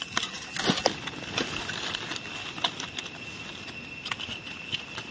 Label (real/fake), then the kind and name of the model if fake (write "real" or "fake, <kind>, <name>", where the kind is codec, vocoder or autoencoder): real